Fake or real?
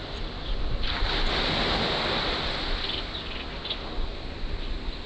real